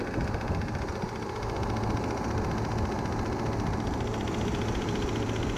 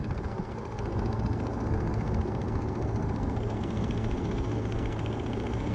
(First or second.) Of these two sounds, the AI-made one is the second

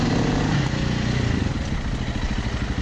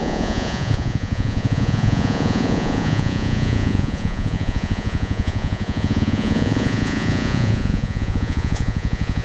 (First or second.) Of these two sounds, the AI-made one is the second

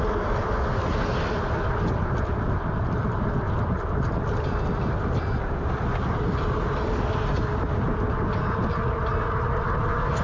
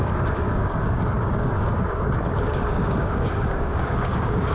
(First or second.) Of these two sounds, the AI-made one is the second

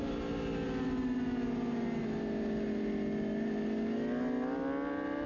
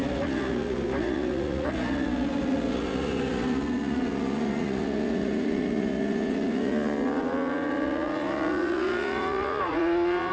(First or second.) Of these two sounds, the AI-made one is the second